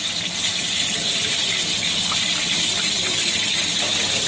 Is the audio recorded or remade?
recorded